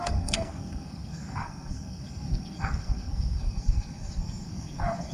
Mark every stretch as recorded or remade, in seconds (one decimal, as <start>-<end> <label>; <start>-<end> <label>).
0.0-5.1 remade